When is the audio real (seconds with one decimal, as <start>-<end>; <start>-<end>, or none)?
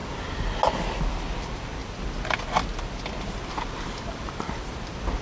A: 0.0-5.2